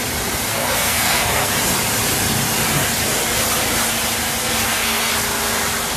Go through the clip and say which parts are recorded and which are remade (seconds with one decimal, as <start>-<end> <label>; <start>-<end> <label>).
0.0-0.5 recorded; 0.5-1.5 remade; 1.5-4.4 recorded; 4.4-5.1 remade; 5.1-6.0 recorded